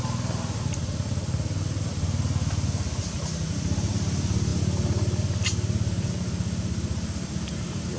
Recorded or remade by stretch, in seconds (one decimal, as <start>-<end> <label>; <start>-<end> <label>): 0.0-8.0 recorded